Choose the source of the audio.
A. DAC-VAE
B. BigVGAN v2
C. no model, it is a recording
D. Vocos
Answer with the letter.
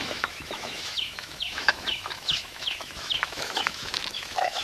A